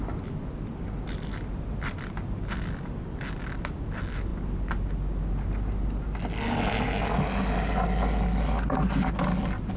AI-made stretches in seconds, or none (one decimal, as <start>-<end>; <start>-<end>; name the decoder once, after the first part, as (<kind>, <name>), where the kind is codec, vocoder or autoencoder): none